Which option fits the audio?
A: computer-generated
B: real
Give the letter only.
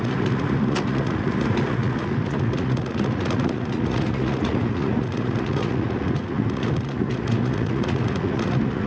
A